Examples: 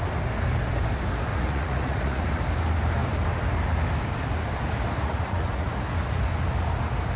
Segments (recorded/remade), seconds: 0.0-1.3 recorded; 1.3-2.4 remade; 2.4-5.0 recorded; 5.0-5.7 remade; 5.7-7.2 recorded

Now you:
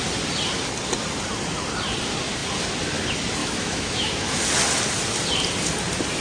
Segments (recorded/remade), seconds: 0.0-3.4 recorded; 3.4-4.4 remade; 4.4-6.2 recorded

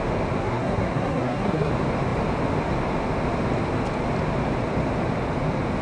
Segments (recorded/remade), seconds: 0.0-0.4 recorded; 0.4-1.7 remade; 1.7-5.8 recorded

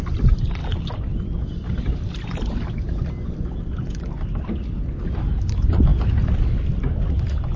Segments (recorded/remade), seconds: 0.0-7.6 recorded

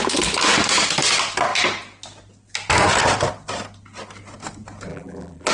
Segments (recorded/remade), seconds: 0.0-4.9 recorded; 4.9-5.5 remade

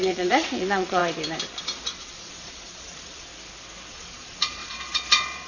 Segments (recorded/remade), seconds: 0.0-1.0 remade; 1.0-1.6 recorded; 1.6-3.3 remade; 3.3-3.9 recorded; 3.9-5.5 remade

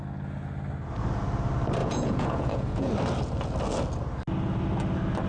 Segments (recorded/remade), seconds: 0.0-1.8 recorded; 1.8-2.9 remade; 2.9-5.3 recorded